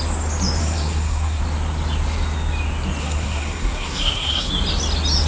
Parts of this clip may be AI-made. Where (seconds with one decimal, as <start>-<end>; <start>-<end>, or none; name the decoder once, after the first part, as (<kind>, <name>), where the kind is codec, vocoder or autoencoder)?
0.6-1.4 (codec, SNAC); 3.0-4.5